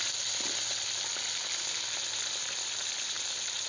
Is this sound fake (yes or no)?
no